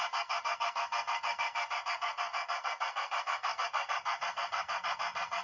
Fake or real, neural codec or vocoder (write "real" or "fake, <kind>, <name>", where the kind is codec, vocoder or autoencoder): fake, codec, SNAC